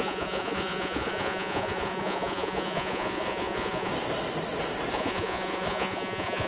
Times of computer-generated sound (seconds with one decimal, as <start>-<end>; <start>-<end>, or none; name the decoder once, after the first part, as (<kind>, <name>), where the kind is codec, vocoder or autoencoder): 0.0-3.9 (vocoder, Vocos); 4.9-6.5